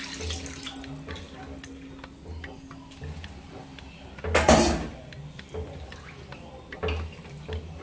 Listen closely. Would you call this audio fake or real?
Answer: real